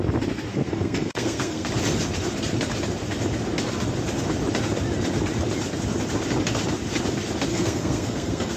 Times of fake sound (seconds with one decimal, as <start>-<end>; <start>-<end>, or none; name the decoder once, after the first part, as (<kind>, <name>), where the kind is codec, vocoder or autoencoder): 0.5-1.7 (codec, SNAC); 7.5-8.6